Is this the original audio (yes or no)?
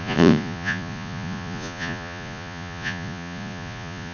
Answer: no